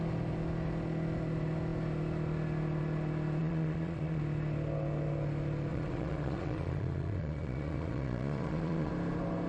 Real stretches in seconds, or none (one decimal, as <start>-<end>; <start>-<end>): 0.0-3.4; 4.2-5.7; 8.9-9.5